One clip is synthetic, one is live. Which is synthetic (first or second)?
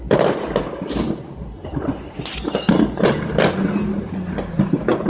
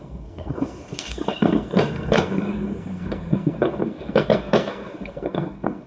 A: second